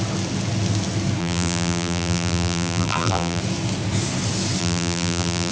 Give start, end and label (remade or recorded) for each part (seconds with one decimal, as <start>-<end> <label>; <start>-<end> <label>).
0.0-1.2 recorded; 1.2-3.4 remade; 3.4-4.6 recorded; 4.6-5.5 remade

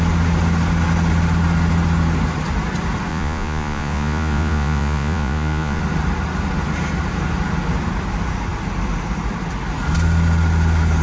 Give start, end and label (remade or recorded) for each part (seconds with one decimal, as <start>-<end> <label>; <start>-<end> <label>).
0.0-3.1 recorded; 3.1-5.8 remade; 5.8-11.0 recorded